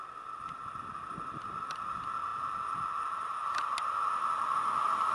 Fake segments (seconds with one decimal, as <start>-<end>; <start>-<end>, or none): none